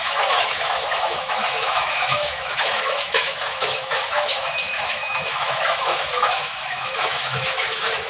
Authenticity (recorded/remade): remade